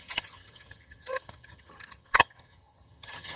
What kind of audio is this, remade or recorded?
remade